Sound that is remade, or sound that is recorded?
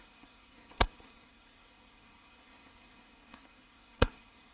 remade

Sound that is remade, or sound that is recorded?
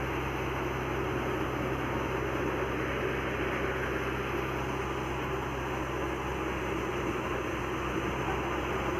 recorded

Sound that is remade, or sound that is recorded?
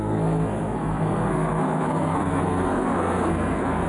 remade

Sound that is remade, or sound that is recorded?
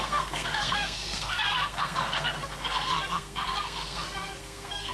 remade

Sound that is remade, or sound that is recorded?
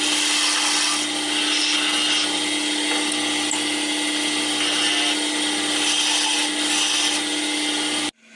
recorded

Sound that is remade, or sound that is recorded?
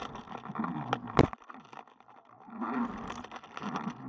recorded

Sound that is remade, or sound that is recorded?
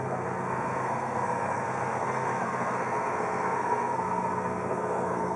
remade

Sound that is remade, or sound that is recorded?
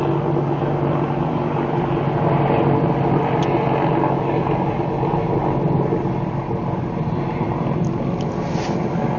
recorded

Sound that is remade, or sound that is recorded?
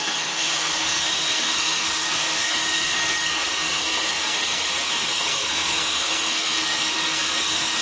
remade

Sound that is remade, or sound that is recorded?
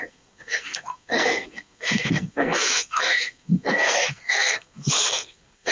remade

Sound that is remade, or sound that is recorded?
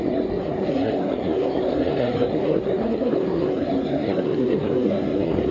remade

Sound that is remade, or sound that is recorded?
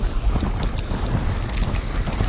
recorded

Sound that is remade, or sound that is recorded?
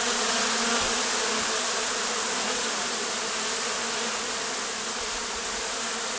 recorded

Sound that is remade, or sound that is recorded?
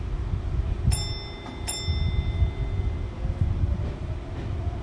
recorded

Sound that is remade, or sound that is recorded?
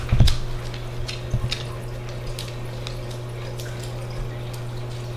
recorded